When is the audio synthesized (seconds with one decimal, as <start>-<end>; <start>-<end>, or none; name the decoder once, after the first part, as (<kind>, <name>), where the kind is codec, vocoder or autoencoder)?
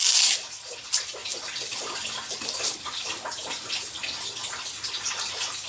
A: 1.2-2.6 (vocoder, BigVGAN v2); 4.4-5.0